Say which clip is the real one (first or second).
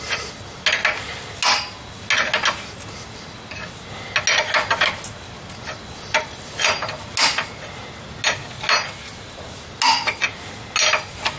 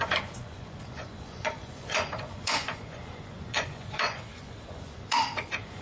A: first